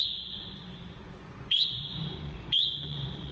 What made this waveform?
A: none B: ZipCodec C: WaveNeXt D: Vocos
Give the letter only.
D